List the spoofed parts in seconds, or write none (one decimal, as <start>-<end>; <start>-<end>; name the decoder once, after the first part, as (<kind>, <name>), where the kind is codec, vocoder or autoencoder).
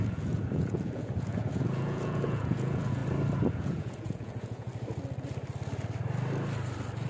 0.0-3.0 (vocoder, Vocos); 3.5-4.7